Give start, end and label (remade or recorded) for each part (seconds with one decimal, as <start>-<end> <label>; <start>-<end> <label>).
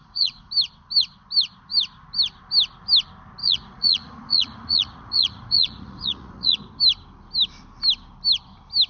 0.0-0.5 remade; 0.5-3.4 recorded; 3.4-6.7 remade; 6.7-8.9 recorded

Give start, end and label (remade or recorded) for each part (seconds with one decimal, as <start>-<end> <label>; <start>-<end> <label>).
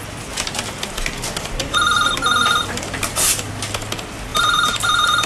0.0-1.6 recorded; 1.6-3.5 remade; 3.5-4.3 recorded; 4.3-5.3 remade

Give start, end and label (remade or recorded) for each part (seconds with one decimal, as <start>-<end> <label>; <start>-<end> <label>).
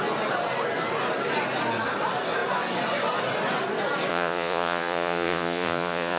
0.0-4.1 recorded; 4.1-6.2 remade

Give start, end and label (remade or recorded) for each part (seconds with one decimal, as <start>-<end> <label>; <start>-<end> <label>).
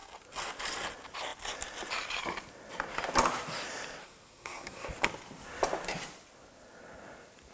0.0-4.0 recorded; 4.0-4.9 remade; 4.9-7.5 recorded